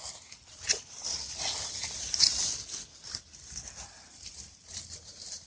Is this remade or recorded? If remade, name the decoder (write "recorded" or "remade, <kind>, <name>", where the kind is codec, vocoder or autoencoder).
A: recorded